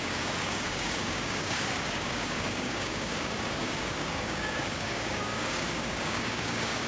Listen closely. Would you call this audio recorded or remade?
remade